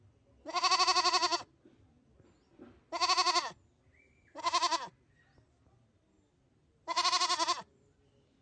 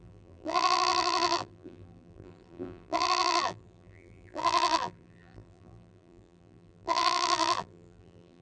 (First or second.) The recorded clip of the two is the first